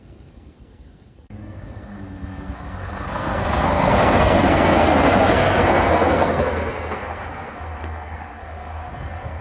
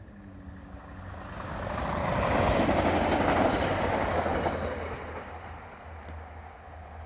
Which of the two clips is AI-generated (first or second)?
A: first